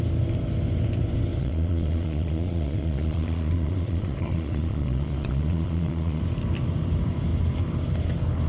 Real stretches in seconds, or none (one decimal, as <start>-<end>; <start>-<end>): 0.0-1.4; 6.2-8.5